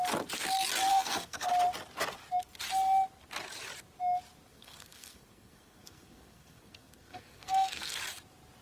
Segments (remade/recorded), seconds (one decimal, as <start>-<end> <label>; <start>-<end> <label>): 0.0-0.9 recorded; 0.9-1.5 remade; 1.5-4.5 recorded; 4.5-8.0 remade; 8.0-8.6 recorded